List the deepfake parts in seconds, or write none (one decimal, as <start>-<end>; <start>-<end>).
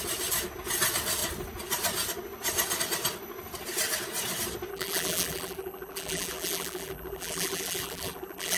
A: 4.7-8.6